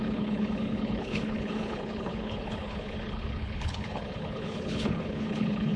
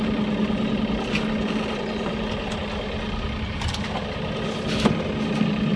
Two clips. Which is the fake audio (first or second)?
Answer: first